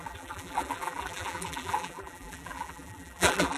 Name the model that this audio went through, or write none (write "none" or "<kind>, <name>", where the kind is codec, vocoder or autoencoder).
vocoder, BigVGAN v2